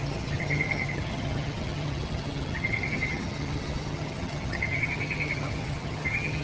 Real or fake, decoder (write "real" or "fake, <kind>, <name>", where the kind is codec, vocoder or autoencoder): fake, vocoder, HiFi-GAN